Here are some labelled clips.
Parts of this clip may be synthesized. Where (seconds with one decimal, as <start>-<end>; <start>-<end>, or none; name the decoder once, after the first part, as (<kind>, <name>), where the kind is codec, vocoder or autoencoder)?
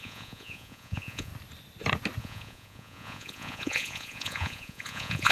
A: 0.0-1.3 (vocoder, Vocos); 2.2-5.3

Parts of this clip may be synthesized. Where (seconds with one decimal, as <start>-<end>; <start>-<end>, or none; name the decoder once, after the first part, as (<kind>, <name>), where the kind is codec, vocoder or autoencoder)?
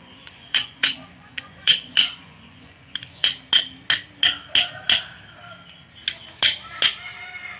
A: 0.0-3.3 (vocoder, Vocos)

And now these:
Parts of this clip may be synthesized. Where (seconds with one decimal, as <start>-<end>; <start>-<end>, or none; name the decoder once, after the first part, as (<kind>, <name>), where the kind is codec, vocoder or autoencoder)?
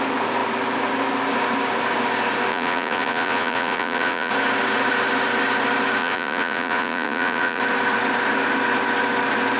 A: 2.5-4.3 (vocoder, Vocos); 6.0-7.6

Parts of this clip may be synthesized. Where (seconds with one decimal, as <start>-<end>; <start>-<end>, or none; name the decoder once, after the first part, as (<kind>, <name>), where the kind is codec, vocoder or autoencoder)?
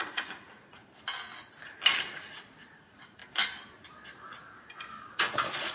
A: 0.0-0.8 (vocoder, Vocos); 2.0-3.2; 5.2-5.7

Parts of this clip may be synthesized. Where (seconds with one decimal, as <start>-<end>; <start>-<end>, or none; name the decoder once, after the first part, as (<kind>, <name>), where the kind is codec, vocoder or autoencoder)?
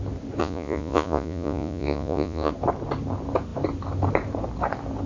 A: 0.4-2.5 (vocoder, Vocos)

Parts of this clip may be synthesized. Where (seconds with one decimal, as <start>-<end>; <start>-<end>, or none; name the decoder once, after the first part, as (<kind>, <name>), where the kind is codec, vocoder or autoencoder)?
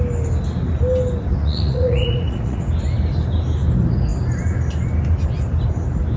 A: 1.3-2.6 (vocoder, Vocos)